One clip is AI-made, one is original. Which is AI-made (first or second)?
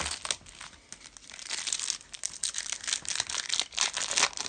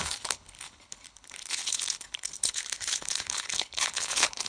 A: second